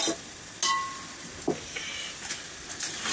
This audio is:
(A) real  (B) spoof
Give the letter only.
A